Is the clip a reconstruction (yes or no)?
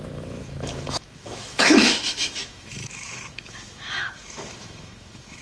yes